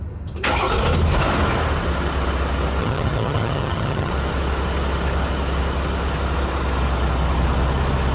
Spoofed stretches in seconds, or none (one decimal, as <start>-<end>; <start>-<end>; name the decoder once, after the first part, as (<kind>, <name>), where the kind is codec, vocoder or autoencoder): 2.8-4.1 (vocoder, HiFi-GAN)